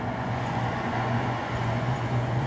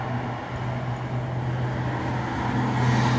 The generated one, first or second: first